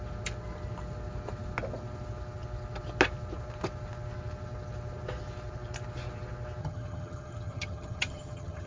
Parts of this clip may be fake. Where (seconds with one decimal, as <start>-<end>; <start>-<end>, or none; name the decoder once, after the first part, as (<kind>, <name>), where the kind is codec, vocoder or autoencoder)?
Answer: 6.6-8.7 (vocoder, HiFi-GAN)